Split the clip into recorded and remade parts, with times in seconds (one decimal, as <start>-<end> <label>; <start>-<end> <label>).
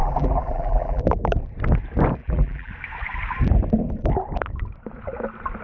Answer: 0.0-1.0 remade; 1.0-2.2 recorded; 2.2-2.7 remade; 2.7-5.6 recorded